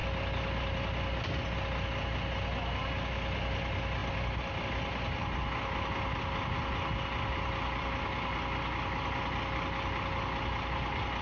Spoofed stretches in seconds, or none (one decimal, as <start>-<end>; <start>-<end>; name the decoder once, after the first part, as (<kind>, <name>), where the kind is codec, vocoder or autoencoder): none